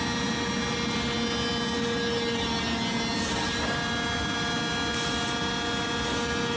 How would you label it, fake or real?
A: real